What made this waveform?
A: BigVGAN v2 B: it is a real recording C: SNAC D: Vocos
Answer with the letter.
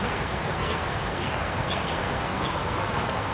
C